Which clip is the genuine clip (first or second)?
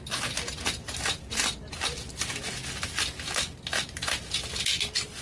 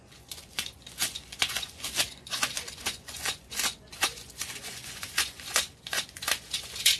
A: first